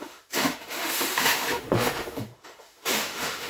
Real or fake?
fake